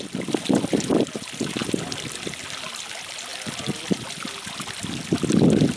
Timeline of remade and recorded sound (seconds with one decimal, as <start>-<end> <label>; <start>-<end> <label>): 0.0-5.8 recorded